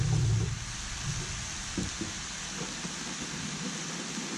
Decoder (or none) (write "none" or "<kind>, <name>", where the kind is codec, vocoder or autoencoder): none